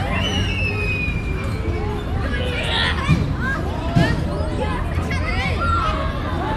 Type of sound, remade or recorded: recorded